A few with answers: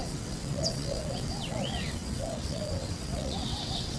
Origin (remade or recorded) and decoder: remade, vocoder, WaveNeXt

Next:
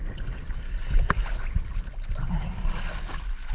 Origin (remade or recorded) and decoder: recorded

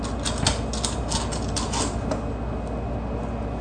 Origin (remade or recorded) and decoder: recorded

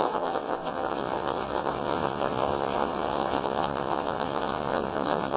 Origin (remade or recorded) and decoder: remade, vocoder, WaveNeXt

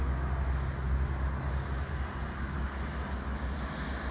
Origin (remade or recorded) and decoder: recorded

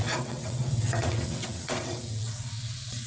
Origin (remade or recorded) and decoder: remade, vocoder, WaveNeXt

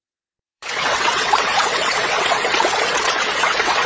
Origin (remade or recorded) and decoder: remade, vocoder, WaveNeXt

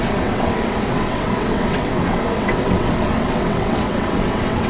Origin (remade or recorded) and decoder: remade, vocoder, WaveNeXt